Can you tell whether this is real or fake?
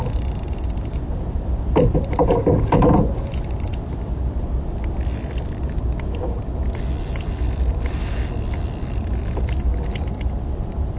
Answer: fake